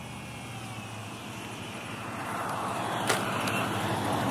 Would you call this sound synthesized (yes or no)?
no